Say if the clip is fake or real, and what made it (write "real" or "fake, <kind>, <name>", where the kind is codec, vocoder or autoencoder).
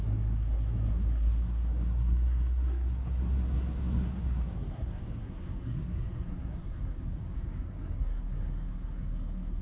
fake, codec, SNAC